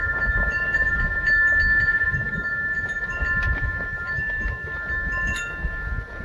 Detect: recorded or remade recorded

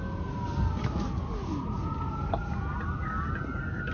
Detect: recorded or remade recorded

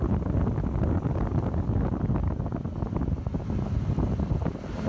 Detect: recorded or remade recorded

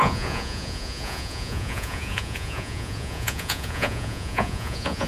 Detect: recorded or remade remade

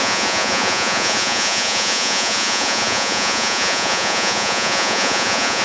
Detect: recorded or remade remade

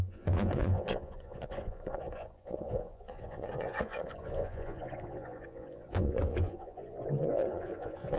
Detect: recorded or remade remade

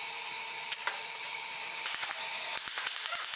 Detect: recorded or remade recorded